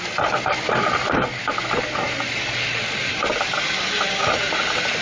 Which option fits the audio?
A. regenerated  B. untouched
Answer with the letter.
B